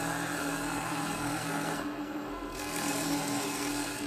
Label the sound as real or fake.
fake